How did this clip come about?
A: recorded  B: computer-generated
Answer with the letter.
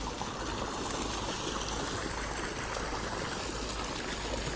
A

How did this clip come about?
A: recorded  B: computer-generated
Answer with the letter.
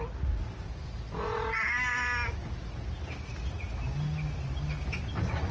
A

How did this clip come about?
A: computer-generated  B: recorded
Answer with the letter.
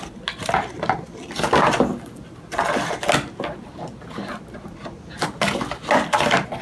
B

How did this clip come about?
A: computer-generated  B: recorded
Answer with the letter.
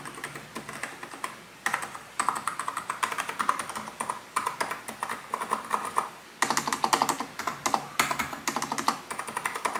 B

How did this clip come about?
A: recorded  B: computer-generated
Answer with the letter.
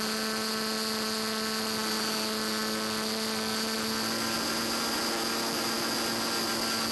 A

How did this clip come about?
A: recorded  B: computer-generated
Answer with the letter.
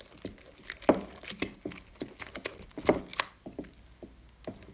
A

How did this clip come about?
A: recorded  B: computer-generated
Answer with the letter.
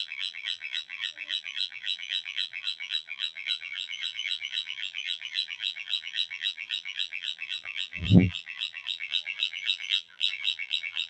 B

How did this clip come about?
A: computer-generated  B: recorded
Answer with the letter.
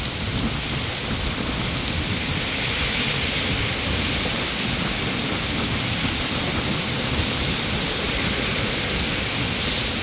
B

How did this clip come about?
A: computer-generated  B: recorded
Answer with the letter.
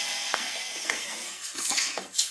A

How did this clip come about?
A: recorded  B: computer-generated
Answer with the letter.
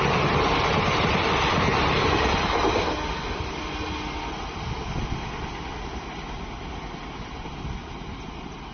A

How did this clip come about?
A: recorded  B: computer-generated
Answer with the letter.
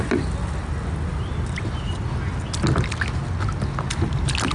A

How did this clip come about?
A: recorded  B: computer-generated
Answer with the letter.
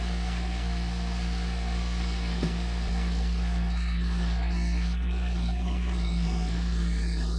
B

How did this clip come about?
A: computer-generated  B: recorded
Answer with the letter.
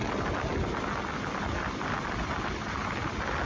B